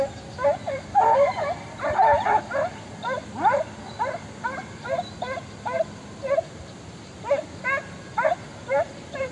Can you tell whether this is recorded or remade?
recorded